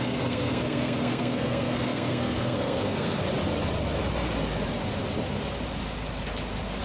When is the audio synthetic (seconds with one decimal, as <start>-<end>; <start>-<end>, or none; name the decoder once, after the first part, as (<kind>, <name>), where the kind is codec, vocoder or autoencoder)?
0.0-3.2 (codec, SNAC)